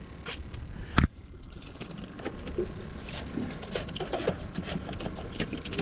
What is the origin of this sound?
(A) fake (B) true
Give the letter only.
B